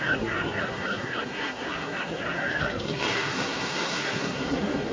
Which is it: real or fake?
fake